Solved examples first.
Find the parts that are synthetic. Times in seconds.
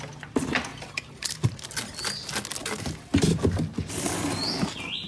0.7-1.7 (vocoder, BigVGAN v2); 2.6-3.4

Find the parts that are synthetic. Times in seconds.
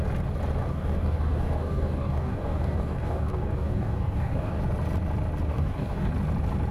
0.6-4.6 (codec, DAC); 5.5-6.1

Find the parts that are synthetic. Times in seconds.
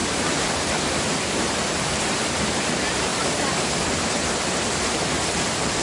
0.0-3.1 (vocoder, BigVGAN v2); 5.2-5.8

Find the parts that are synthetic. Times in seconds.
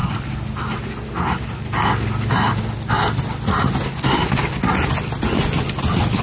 none